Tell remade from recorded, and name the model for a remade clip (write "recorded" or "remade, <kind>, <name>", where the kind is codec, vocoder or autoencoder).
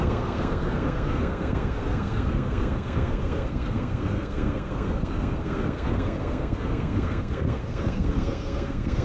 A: remade, codec, SNAC